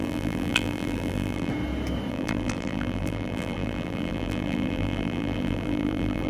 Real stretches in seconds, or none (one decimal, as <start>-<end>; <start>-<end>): 1.5-2.1